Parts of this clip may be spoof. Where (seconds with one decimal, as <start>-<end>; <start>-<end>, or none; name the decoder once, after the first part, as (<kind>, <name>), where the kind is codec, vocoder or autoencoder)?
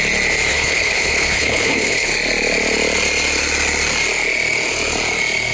0.5-2.1 (codec, HILCodec)